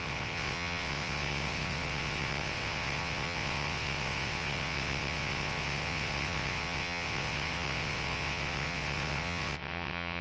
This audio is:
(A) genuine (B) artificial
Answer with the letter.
B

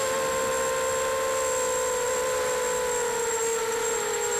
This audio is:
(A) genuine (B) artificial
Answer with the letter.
A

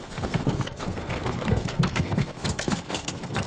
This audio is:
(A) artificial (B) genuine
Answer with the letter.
A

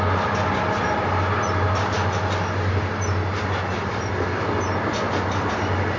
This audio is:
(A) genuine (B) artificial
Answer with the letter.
A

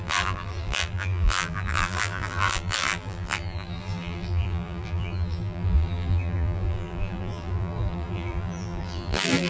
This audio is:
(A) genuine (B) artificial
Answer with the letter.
B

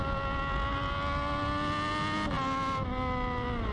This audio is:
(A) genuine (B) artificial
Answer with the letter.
A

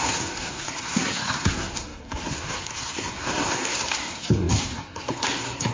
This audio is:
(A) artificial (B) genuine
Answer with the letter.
A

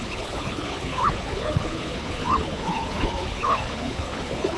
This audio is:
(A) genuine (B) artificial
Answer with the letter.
B